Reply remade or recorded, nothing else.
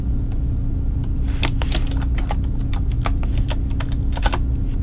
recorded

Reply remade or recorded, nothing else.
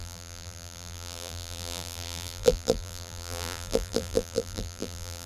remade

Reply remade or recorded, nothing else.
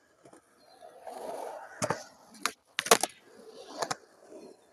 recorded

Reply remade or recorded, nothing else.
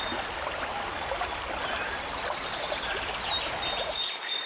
recorded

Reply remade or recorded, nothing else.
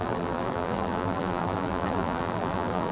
remade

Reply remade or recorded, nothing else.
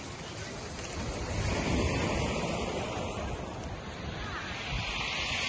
recorded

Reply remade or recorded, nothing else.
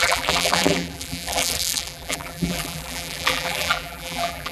remade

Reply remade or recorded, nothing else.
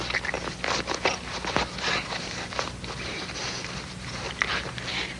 recorded